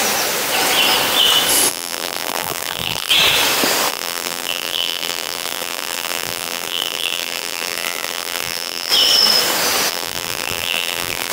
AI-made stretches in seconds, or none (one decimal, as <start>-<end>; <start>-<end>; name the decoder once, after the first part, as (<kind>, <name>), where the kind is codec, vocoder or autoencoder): 1.7-3.1 (vocoder, BigVGAN v2); 3.9-8.9; 9.9-11.3